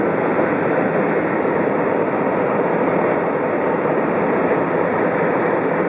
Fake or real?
real